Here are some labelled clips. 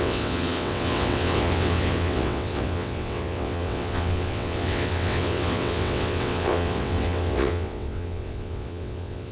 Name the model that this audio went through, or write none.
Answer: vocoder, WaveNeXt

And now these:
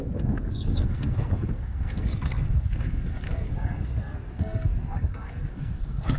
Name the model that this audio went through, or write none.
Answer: codec, SNAC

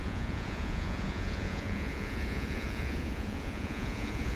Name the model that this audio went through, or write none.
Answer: vocoder, Vocos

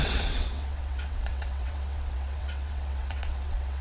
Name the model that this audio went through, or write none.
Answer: vocoder, WaveNeXt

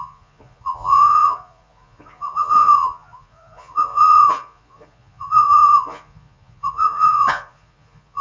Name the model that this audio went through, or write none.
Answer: vocoder, Vocos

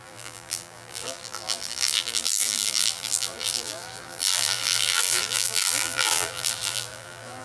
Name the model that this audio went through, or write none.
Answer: vocoder, BigVGAN v2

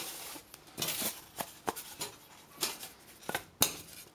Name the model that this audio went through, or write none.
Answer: none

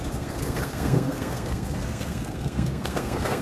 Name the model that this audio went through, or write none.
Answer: codec, SNAC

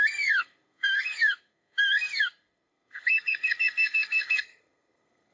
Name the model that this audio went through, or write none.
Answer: codec, SNAC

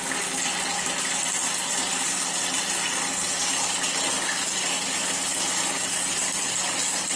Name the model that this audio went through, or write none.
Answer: none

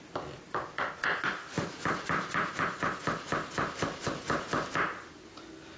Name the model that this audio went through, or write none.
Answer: none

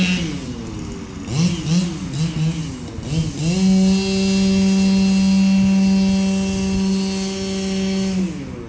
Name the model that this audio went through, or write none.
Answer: none